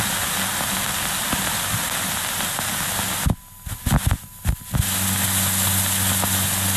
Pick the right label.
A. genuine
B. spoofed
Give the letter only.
A